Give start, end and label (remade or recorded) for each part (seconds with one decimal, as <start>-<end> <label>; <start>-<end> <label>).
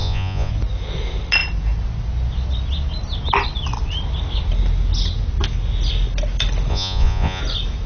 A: 0.0-0.5 remade; 0.5-6.7 recorded; 6.7-7.4 remade; 7.4-7.9 recorded